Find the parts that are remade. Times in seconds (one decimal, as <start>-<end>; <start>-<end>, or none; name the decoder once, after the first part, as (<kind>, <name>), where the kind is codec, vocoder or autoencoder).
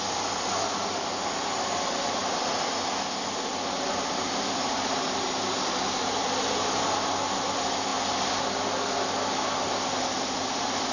none